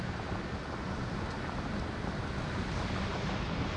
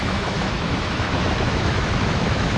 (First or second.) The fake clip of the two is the second